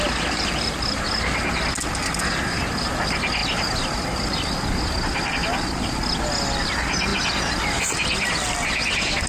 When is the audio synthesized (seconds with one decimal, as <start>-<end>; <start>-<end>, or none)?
none